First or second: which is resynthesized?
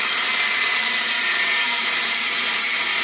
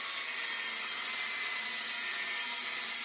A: first